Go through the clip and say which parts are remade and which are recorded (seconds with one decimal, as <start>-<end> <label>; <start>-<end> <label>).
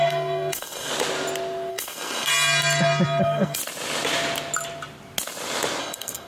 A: 0.0-0.9 remade; 0.9-1.7 recorded; 1.7-2.3 remade; 2.3-3.2 recorded; 3.2-3.6 remade; 3.6-5.8 recorded; 5.8-6.3 remade